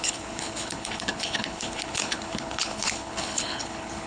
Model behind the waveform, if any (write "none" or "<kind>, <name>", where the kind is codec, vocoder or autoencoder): codec, HILCodec